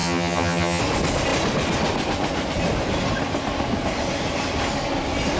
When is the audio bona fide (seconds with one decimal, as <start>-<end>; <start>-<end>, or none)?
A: 0.8-5.4